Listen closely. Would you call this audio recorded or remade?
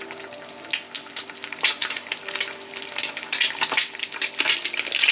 recorded